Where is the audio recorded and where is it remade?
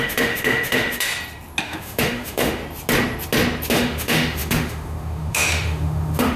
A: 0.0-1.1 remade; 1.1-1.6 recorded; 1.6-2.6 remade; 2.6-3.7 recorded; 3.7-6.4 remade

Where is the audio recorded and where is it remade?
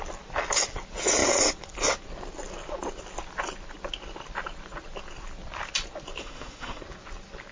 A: 0.0-6.2 recorded; 6.2-6.8 remade; 6.8-7.5 recorded